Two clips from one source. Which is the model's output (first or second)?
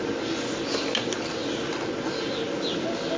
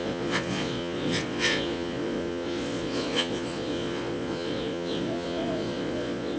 second